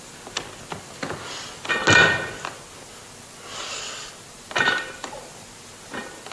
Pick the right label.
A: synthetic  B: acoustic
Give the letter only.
B